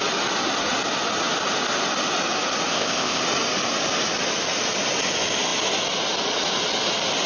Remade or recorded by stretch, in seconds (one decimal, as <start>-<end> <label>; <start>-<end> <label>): 0.0-2.7 recorded; 2.7-3.2 remade; 3.2-7.3 recorded